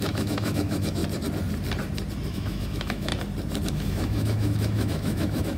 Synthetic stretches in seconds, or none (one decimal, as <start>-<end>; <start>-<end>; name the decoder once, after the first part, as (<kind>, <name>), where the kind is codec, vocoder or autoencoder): 0.0-1.0 (autoencoder, DAC-VAE); 2.3-3.1; 3.7-5.6